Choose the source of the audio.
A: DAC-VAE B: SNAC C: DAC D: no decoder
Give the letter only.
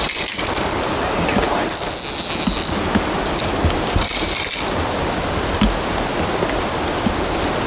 D